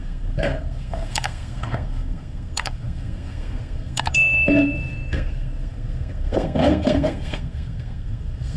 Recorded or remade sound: remade